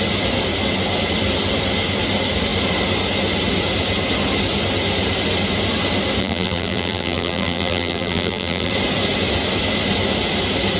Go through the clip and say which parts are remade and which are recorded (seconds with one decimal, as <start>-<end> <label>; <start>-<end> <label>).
0.0-6.2 recorded; 6.2-8.7 remade; 8.7-10.8 recorded